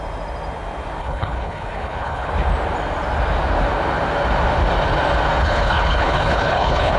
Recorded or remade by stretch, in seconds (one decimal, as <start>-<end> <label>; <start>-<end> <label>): 0.0-1.0 recorded; 1.0-2.3 remade; 2.3-5.4 recorded; 5.4-7.0 remade